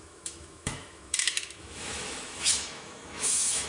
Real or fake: fake